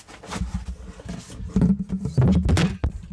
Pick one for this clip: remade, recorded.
recorded